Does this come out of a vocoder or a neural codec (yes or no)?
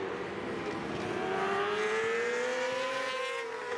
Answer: no